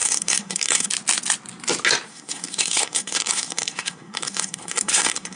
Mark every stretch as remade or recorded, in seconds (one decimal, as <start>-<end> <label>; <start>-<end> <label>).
0.0-0.9 remade; 0.9-2.1 recorded; 2.1-5.4 remade